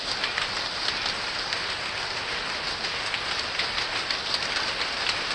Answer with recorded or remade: recorded